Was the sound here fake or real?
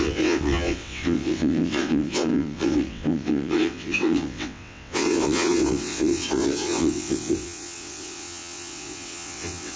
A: fake